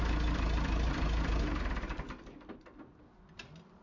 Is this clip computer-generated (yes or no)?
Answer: no